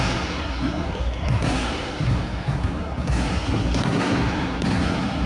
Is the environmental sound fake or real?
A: fake